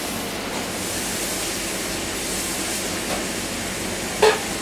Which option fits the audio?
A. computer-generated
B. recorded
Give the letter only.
B